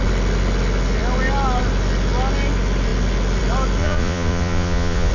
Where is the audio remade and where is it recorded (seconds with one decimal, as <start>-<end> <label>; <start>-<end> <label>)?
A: 0.0-3.8 recorded; 3.8-5.1 remade